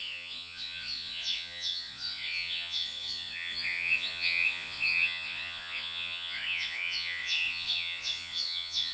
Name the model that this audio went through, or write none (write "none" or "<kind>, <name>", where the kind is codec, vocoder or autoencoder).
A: vocoder, Vocos